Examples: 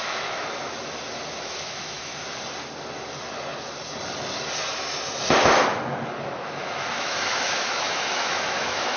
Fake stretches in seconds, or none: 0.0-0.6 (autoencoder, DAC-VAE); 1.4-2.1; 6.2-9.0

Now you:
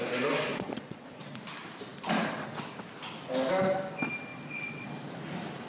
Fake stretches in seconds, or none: 0.5-1.4 (vocoder, Vocos); 4.3-4.9

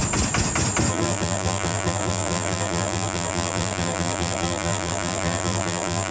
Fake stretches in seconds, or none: 0.9-6.1 (vocoder, BigVGAN v2)

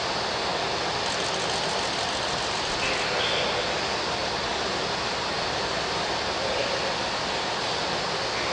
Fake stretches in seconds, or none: none

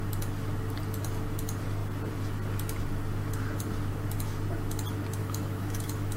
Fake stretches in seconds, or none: 5.2-6.2 (autoencoder, DAC-VAE)

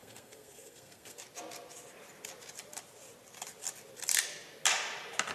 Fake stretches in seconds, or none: 0.0-1.2 (codec, SNAC)

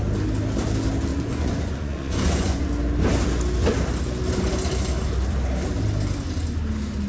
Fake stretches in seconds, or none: 1.1-2.7 (vocoder, Vocos)